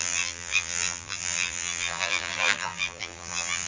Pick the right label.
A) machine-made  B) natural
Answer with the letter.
A